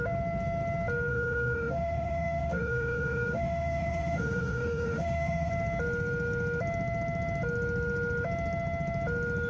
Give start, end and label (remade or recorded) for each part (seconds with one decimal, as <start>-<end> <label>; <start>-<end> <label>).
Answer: 0.0-1.1 recorded; 1.1-5.5 remade; 5.5-9.5 recorded